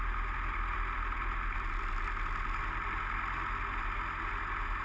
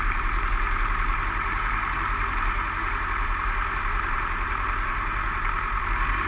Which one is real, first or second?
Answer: first